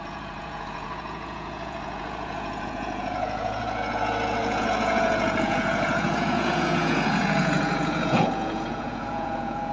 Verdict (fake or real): fake